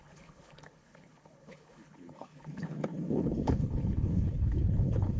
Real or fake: fake